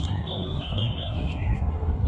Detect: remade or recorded remade